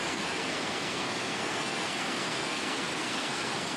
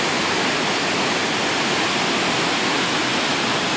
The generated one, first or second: first